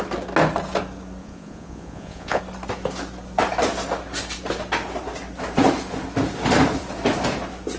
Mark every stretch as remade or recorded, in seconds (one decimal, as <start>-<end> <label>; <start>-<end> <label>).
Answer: 0.0-1.2 recorded; 1.2-2.4 remade; 2.4-7.8 recorded

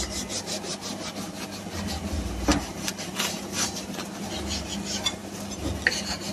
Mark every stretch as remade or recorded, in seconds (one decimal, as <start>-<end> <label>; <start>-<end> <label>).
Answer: 0.0-2.5 recorded; 2.5-4.0 remade; 4.0-6.3 recorded

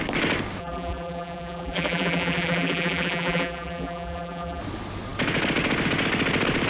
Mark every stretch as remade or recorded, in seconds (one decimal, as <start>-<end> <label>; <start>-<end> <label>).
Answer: 0.0-0.6 recorded; 0.6-4.6 remade; 4.6-6.7 recorded